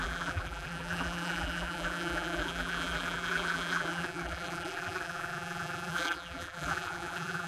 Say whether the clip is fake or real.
fake